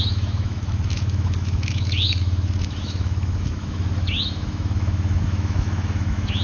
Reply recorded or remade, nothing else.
remade